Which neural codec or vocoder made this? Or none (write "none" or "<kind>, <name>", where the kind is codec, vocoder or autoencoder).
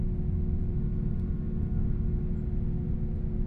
none